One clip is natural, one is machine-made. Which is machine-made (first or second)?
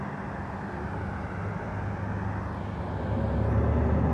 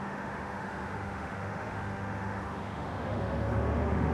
second